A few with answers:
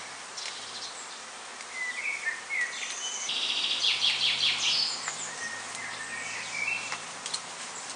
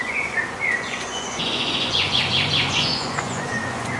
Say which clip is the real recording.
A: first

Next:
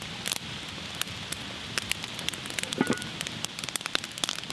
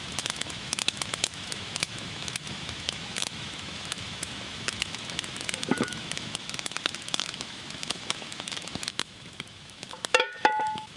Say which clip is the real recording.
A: first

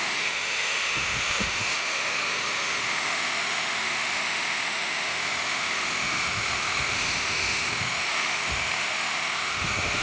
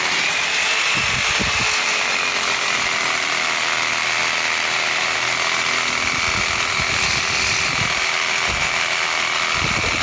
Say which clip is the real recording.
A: second